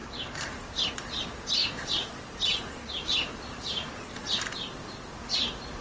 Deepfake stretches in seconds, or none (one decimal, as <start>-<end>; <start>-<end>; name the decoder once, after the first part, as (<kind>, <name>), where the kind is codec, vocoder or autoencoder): 0.0-0.7 (vocoder, BigVGAN v2); 1.6-5.1